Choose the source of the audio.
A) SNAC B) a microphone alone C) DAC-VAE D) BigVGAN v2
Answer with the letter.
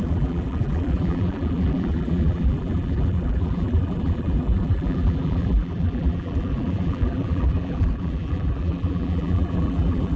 D